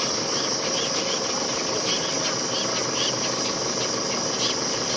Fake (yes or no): no